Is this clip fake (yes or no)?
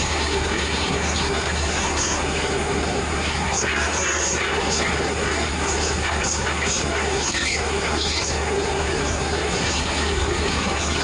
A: yes